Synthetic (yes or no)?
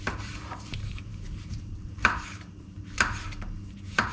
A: yes